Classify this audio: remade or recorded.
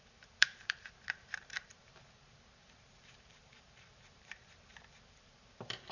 remade